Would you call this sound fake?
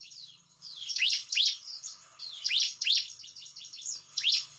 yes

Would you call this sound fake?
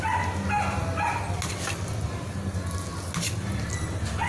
no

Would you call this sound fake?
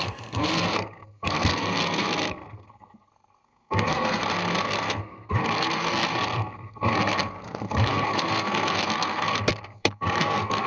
yes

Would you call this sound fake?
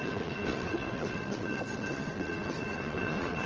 yes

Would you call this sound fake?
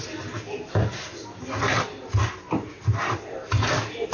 no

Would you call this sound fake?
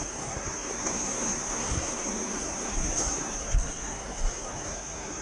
yes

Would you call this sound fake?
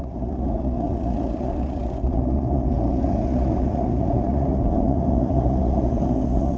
yes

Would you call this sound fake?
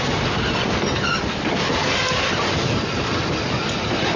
no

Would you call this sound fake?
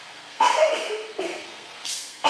yes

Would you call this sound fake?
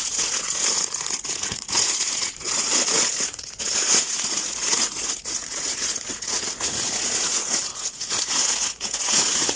yes